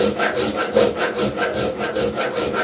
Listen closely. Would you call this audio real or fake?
real